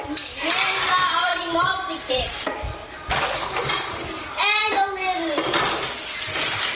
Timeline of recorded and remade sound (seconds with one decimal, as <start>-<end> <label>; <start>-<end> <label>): 0.0-1.3 remade; 1.3-2.1 recorded; 2.1-2.8 remade; 2.8-3.7 recorded; 3.7-4.4 remade; 4.4-5.4 recorded; 5.4-6.7 remade